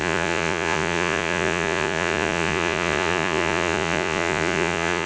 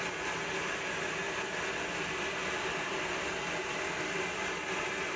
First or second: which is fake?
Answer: first